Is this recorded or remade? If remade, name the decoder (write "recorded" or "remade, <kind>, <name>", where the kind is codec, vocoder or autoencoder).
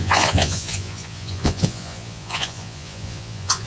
remade, vocoder, Vocos